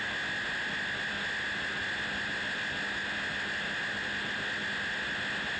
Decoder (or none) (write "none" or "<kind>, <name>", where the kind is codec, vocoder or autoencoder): none